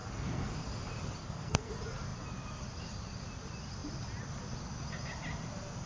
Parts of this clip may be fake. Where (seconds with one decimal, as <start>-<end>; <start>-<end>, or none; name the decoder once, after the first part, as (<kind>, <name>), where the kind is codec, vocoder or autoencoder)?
0.0-0.5 (codec, SNAC); 1.2-1.7